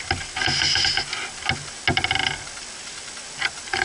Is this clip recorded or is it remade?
recorded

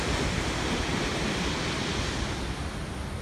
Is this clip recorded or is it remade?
recorded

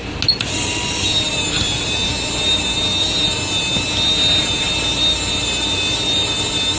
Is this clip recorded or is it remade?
recorded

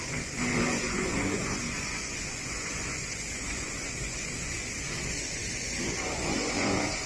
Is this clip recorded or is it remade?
remade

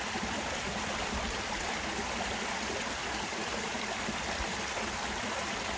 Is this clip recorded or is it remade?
remade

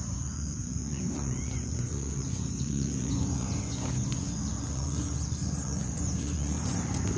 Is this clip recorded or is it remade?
remade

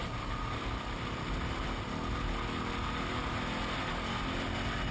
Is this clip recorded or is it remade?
recorded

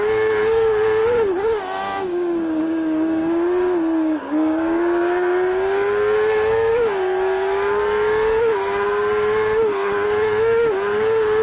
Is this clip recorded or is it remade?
remade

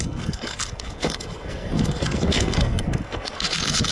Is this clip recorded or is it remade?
remade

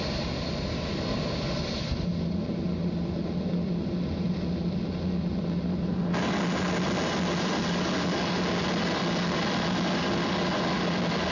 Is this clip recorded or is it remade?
recorded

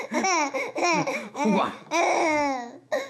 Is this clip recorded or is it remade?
remade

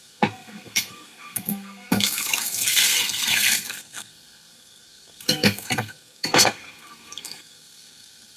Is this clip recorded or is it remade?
remade